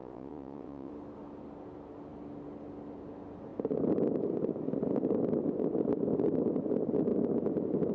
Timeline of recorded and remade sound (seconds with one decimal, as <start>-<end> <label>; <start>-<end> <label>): 0.0-0.9 remade; 0.9-7.9 recorded